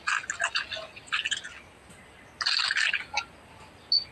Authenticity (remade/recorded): recorded